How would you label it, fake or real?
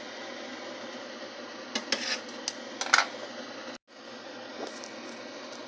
real